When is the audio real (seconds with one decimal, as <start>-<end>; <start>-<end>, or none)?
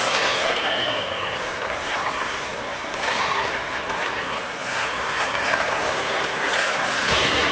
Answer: none